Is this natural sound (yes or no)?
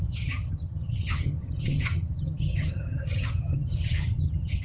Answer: no